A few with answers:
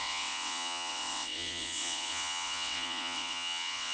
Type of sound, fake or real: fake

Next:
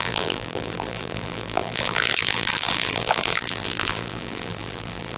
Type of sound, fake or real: fake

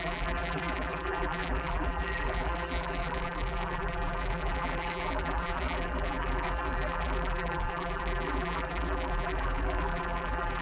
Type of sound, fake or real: fake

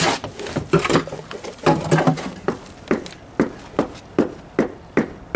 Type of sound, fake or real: real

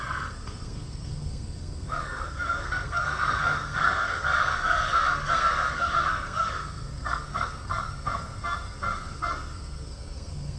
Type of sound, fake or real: fake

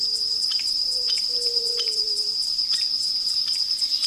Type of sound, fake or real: fake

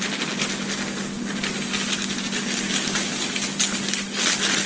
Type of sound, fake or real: real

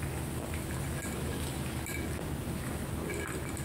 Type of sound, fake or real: real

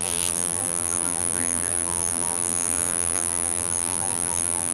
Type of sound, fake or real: fake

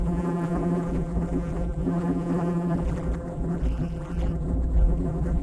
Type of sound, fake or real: fake